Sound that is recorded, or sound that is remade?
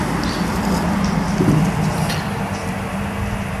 recorded